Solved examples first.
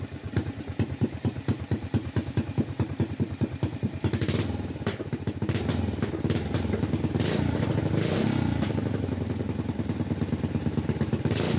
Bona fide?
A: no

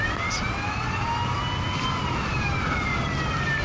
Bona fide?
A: yes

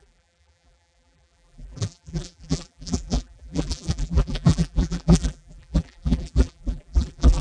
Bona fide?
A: no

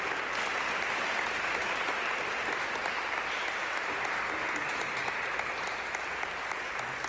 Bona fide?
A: yes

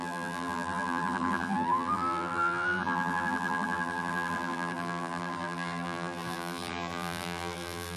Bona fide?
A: no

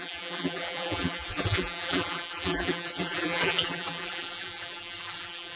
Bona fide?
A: no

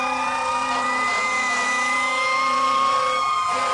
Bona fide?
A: no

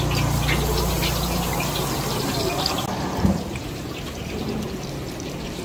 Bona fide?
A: yes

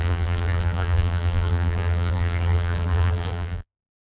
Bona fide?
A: no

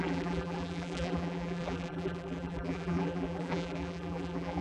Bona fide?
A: no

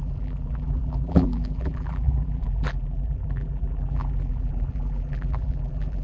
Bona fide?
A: no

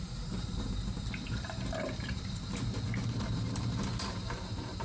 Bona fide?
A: no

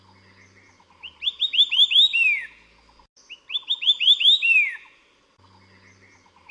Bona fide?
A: yes